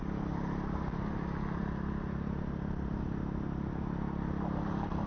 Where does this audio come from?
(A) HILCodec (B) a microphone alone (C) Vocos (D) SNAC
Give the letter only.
B